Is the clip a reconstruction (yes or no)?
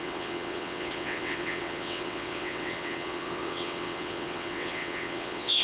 yes